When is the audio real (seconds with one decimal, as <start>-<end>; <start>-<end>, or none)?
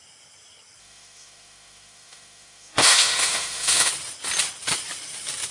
0.0-0.8; 3.9-5.5